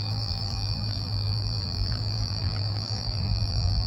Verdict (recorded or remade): remade